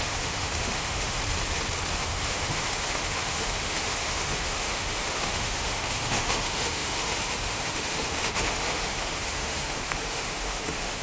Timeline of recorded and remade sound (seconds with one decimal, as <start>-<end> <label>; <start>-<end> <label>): 0.0-1.2 remade; 1.2-1.9 recorded; 1.9-11.0 remade